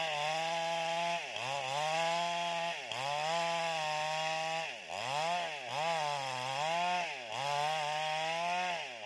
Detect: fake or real real